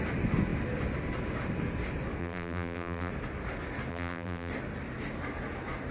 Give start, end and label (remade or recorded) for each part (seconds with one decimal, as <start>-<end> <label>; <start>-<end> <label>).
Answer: 0.0-2.2 recorded; 2.2-3.1 remade; 3.1-3.9 recorded; 3.9-4.5 remade; 4.5-5.9 recorded